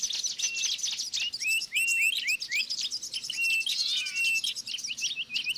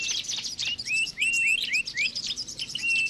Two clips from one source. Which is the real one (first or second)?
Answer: first